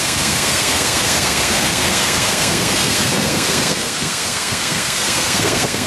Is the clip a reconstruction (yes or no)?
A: yes